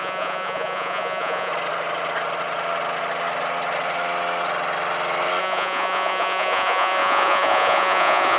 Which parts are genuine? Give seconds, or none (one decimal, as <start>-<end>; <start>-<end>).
1.5-5.4